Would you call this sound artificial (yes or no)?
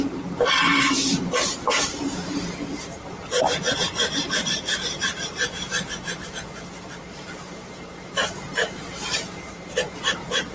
yes